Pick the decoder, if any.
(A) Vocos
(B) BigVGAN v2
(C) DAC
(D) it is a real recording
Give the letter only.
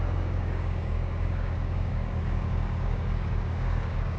C